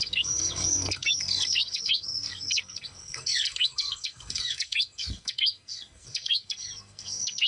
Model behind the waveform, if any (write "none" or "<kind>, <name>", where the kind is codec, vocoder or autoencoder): codec, SNAC